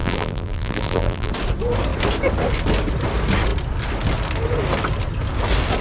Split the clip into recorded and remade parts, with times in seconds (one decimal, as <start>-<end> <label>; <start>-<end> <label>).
0.0-1.3 remade; 1.3-5.8 recorded